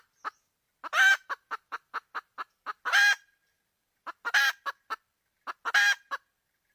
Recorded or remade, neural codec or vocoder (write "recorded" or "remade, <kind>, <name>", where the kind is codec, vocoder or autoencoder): remade, vocoder, BigVGAN v2